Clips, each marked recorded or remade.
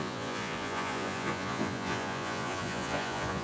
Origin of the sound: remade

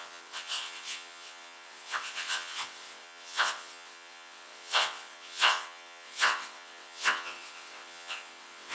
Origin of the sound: remade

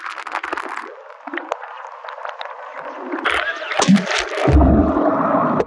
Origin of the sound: recorded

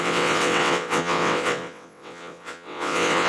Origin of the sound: remade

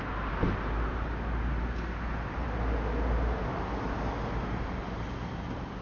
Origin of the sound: recorded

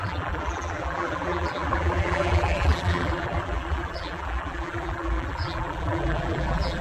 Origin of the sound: remade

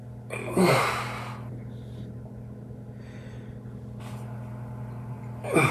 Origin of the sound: recorded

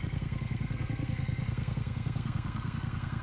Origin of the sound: remade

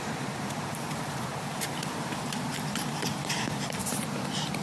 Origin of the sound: remade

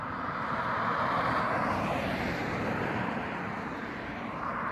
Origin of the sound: remade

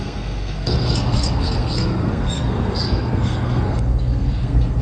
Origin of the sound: remade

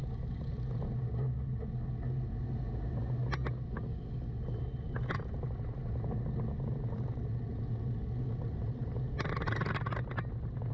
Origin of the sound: recorded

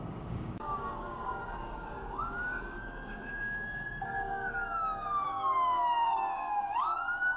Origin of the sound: remade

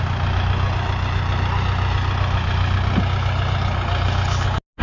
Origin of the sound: recorded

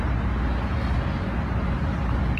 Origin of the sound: recorded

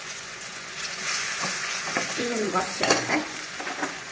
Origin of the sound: remade